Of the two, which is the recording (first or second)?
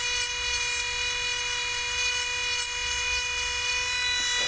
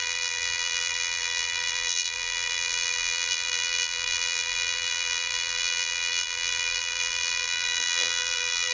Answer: first